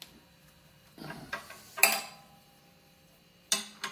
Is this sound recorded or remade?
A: recorded